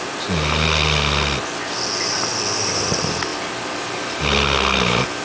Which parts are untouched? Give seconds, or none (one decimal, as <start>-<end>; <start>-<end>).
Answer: 0.0-5.2